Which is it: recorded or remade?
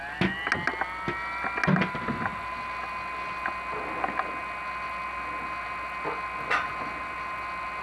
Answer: recorded